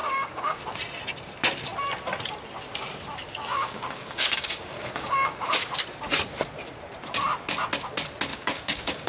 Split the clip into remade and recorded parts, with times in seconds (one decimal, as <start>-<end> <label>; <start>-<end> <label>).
0.0-0.6 remade; 0.6-3.5 recorded; 3.5-5.7 remade; 5.7-8.3 recorded; 8.3-9.1 remade